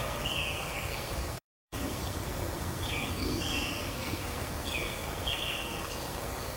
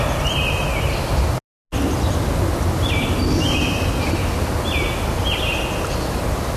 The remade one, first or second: first